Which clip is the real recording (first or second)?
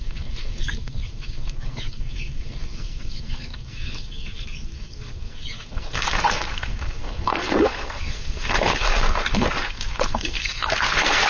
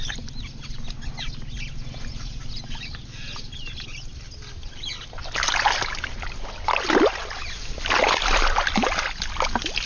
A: second